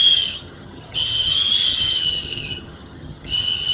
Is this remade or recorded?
remade